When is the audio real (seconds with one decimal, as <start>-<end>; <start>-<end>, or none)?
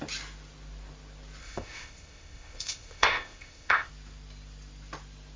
0.0-1.4; 3.9-5.4